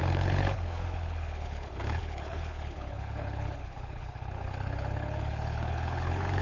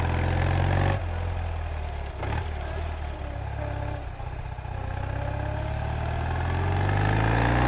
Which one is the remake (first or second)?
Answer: first